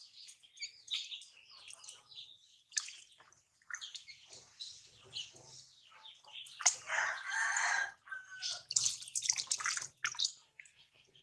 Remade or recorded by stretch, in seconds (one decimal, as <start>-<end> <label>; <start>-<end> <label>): 0.0-10.2 recorded; 10.2-11.2 remade

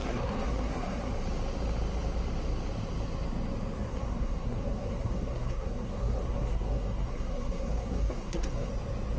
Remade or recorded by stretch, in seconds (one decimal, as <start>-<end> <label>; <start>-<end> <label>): 0.0-1.1 remade; 1.1-3.9 recorded; 3.9-8.7 remade; 8.7-9.2 recorded

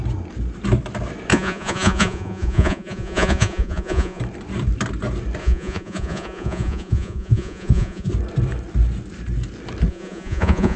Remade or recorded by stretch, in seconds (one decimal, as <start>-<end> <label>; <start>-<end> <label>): 0.0-1.3 recorded; 1.3-4.2 remade; 4.2-5.4 recorded; 5.4-8.1 remade; 8.1-9.9 recorded; 9.9-10.8 remade

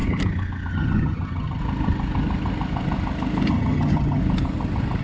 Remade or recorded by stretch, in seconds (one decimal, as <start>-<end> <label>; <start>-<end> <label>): 0.0-0.7 recorded; 0.7-1.6 remade; 1.6-3.5 recorded; 3.5-4.2 remade; 4.2-5.0 recorded

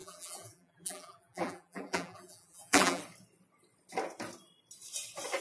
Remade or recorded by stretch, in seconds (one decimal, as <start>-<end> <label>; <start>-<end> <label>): 0.0-3.0 remade; 3.0-5.4 recorded

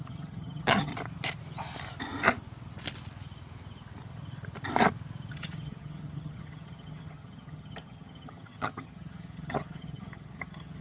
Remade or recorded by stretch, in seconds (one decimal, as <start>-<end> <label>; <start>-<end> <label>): 0.0-0.9 remade; 0.9-5.3 recorded; 5.3-10.8 remade